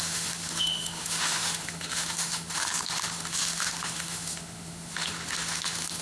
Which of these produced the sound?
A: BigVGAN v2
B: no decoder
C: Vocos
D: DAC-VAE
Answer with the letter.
D